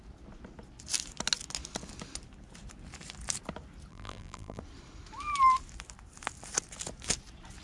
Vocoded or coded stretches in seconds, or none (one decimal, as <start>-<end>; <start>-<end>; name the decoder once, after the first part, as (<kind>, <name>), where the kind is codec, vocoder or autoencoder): 3.9-4.6 (vocoder, BigVGAN v2)